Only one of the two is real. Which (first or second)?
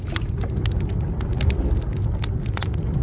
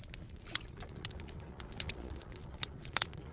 first